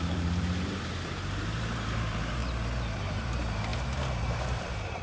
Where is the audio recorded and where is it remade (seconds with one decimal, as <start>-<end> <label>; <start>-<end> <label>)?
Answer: 0.0-2.4 remade; 2.4-3.1 recorded; 3.1-5.0 remade